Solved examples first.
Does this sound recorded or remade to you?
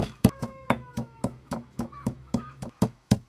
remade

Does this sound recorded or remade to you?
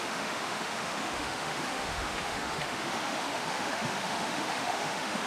remade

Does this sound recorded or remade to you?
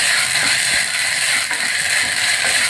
recorded